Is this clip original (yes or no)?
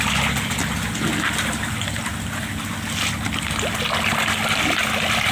yes